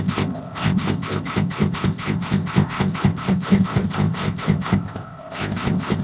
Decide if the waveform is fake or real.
fake